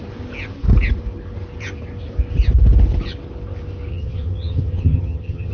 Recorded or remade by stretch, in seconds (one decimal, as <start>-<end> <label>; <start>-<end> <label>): 0.0-3.9 recorded; 3.9-5.5 remade